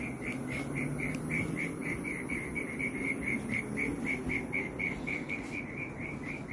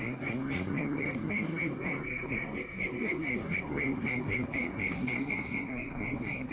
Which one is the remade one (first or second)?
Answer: second